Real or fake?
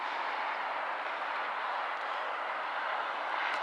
real